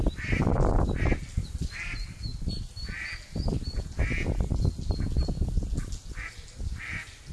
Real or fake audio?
real